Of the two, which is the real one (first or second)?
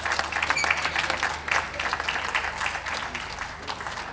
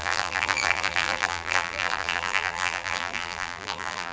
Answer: first